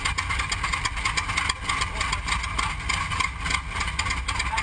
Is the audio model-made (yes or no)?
no